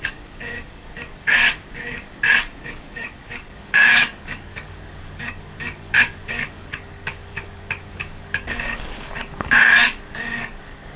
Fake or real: fake